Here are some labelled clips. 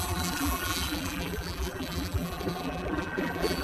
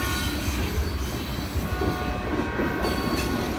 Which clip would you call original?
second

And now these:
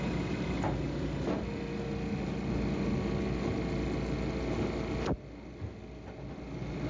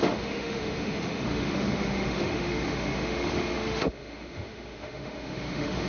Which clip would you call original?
first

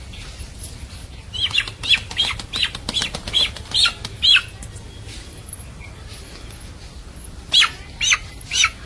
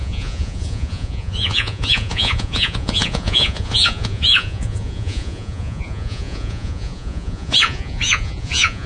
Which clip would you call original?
first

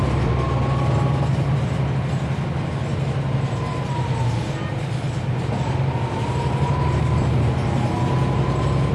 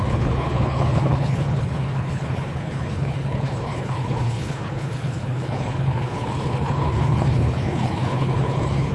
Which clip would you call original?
first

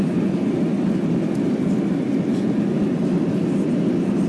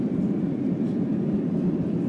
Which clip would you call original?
first